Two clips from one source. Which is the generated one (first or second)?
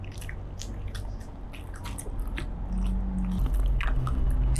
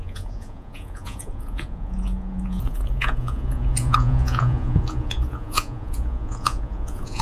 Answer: second